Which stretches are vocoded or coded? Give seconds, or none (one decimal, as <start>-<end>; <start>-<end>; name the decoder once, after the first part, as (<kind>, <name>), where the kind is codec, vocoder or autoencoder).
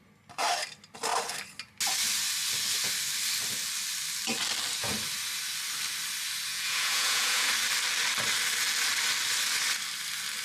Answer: 6.5-7.5 (vocoder, Vocos)